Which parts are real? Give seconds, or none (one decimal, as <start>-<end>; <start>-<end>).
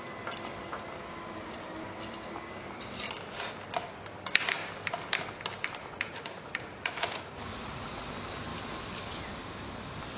0.0-5.8; 8.1-10.2